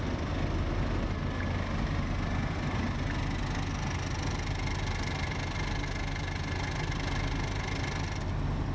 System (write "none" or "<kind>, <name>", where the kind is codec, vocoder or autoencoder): none